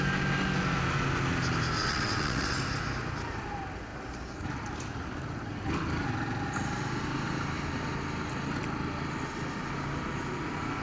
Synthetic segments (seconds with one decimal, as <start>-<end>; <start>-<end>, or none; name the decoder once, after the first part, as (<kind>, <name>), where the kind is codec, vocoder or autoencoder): 1.8-2.6 (vocoder, WaveNeXt)

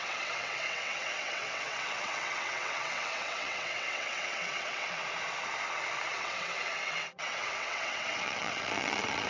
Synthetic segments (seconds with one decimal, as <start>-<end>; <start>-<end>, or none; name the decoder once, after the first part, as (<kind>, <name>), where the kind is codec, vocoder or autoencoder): 0.0-5.0 (vocoder, WaveNeXt); 6.1-9.3

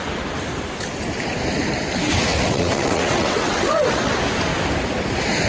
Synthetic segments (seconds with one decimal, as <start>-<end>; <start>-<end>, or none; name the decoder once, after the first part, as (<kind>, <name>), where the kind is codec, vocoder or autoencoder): 2.3-4.1 (vocoder, WaveNeXt)

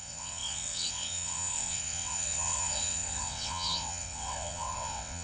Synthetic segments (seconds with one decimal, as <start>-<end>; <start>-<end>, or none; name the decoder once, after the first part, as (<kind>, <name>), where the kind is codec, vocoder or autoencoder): 0.0-5.2 (vocoder, WaveNeXt)